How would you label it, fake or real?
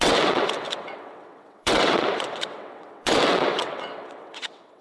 fake